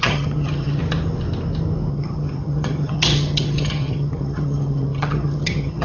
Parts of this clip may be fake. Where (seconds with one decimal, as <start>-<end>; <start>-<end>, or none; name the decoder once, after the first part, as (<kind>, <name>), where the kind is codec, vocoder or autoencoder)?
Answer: 0.0-0.8 (vocoder, HiFi-GAN); 1.9-5.8